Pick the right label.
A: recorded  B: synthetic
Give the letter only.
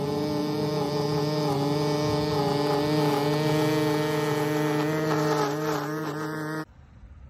A